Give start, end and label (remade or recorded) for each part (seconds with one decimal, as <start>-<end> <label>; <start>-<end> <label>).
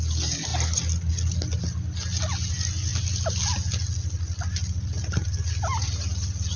0.0-6.6 recorded